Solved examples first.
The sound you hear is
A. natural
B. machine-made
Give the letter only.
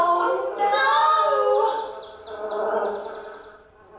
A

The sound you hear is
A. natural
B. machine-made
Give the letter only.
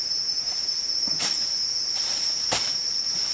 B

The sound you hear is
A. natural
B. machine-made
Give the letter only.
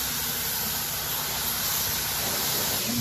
A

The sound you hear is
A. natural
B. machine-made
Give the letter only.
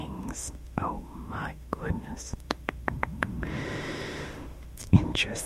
B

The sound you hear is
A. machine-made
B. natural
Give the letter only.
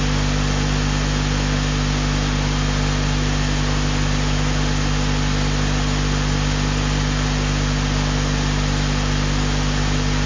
B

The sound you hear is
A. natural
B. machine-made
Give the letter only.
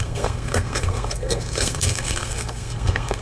B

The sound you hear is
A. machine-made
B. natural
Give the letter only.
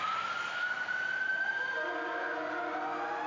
B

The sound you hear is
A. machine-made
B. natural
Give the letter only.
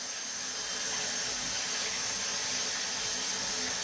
B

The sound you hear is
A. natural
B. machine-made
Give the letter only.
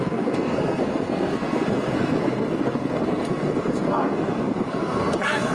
B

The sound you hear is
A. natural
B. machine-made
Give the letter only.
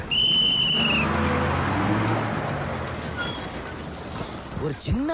A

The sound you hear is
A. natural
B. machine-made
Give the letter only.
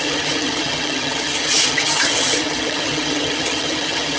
B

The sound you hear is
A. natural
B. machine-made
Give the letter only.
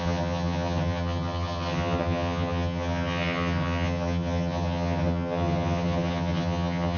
B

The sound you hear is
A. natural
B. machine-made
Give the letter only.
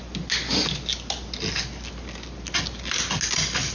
A